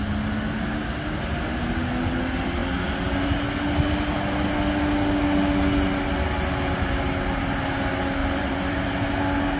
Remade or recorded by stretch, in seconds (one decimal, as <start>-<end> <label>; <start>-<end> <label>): 0.0-8.2 recorded; 8.2-8.9 remade; 8.9-9.6 recorded